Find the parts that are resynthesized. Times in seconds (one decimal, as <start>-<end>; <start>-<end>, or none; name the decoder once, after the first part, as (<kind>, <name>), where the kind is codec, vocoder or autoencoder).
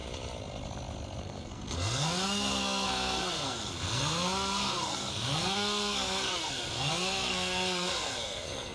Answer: 1.2-8.7 (codec, SNAC)